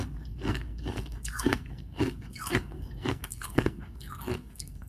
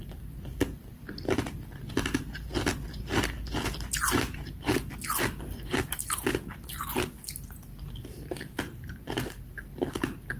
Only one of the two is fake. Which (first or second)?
first